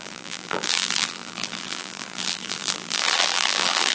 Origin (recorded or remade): remade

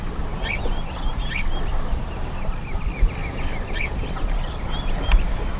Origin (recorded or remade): recorded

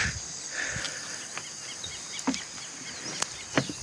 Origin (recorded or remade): recorded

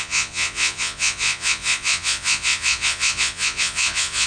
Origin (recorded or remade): remade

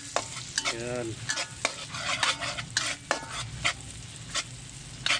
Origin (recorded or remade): recorded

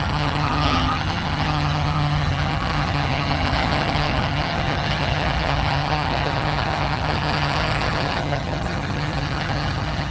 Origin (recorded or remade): remade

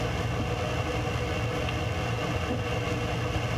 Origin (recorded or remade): recorded